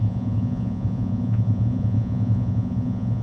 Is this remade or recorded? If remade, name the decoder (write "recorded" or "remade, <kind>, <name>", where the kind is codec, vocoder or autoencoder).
remade, vocoder, Vocos